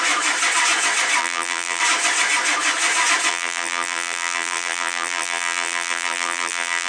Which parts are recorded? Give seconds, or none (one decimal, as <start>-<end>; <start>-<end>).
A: 0.0-1.2; 1.8-3.3